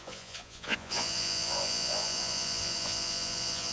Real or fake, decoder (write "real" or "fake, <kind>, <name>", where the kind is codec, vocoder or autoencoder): fake, vocoder, Vocos